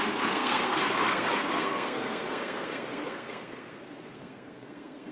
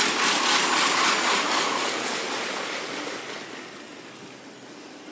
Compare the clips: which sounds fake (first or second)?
first